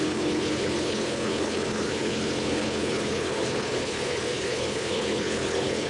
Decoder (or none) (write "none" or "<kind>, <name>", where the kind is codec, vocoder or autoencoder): codec, HILCodec